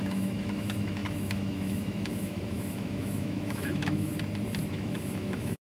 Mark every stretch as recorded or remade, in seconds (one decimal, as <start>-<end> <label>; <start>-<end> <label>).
0.0-4.1 remade; 4.1-4.7 recorded; 4.7-5.7 remade